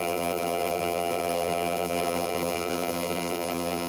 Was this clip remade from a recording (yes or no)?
yes